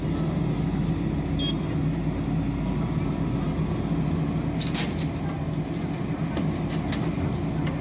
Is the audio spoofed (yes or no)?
no